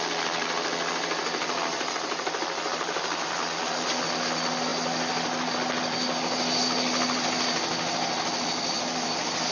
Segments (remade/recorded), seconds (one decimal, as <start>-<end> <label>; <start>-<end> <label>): 0.0-9.5 recorded